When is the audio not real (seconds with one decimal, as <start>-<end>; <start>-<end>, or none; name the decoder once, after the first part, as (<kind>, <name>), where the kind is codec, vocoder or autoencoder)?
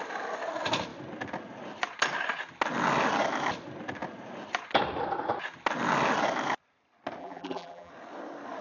7.2-7.9 (vocoder, BigVGAN v2)